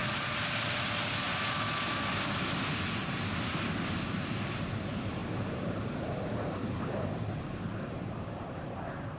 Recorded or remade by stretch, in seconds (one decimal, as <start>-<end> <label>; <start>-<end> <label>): 0.0-3.9 recorded; 3.9-9.2 remade